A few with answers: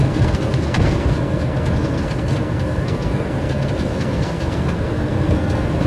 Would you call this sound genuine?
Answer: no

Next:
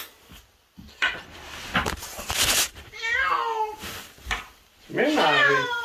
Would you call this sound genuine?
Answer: yes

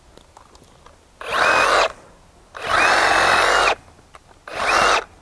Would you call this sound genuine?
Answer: yes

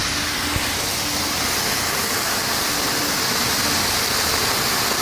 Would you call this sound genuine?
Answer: yes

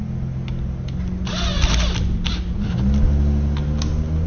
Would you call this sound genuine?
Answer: yes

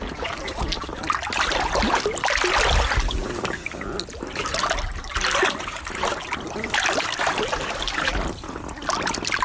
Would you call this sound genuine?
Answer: yes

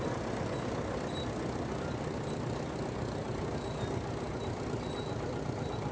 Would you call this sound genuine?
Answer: yes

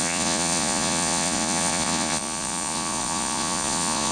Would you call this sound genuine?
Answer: no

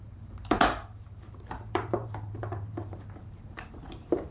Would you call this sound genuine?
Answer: no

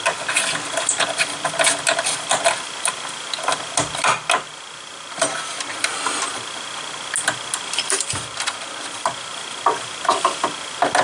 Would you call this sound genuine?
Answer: yes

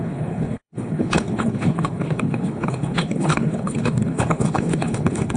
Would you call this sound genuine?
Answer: no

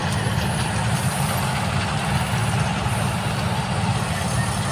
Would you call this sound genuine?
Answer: yes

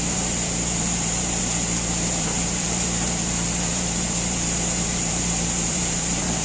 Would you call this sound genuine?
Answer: no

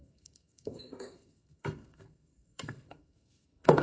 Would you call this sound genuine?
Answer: no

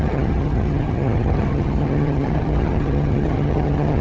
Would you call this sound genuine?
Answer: no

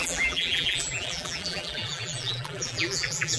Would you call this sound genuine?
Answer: no